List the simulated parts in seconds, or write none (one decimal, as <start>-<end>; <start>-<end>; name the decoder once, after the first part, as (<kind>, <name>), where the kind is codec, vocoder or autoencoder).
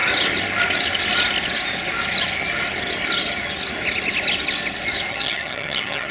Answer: 5.1-6.1 (vocoder, HiFi-GAN)